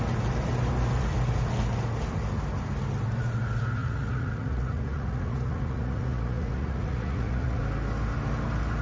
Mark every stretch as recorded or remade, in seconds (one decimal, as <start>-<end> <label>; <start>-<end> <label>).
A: 0.0-3.8 recorded; 3.8-7.6 remade; 7.6-8.8 recorded